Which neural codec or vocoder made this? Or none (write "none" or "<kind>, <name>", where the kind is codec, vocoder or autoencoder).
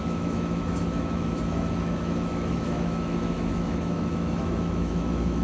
autoencoder, DAC-VAE